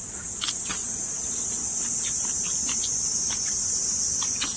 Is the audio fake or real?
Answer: real